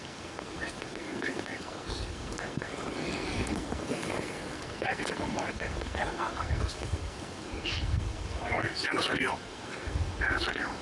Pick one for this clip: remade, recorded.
remade